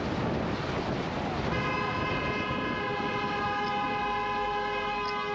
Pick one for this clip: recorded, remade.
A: recorded